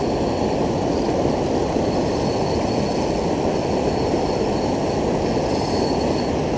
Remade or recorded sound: recorded